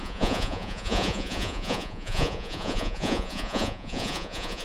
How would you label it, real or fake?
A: fake